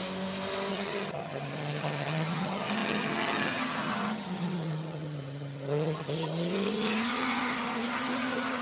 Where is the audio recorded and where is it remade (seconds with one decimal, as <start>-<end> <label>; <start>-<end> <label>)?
0.0-0.7 recorded; 0.7-8.6 remade